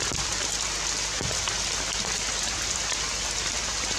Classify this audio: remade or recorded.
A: recorded